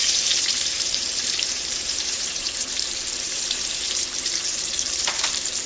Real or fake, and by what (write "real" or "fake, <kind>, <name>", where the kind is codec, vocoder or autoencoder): fake, vocoder, BigVGAN v2